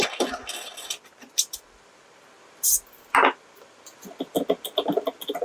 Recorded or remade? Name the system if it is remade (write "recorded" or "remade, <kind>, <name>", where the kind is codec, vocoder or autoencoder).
recorded